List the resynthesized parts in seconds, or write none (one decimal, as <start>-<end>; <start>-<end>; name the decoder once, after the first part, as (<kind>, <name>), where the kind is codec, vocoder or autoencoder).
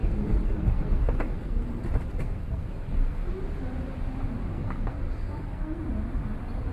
0.0-1.8 (codec, SNAC); 2.2-3.3; 4.5-5.8